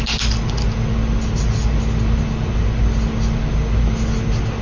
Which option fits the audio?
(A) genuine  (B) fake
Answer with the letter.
A